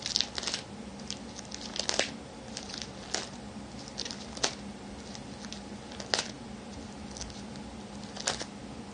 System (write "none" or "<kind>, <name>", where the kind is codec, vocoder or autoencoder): none